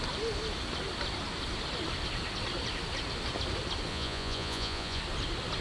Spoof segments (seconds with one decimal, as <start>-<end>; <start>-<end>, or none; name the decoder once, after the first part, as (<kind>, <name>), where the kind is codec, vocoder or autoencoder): 3.9-5.0 (vocoder, Vocos)